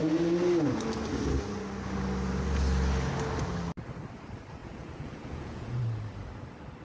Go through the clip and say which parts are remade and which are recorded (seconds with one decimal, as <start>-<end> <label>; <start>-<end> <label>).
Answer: 0.0-4.6 recorded; 4.6-5.8 remade; 5.8-6.8 recorded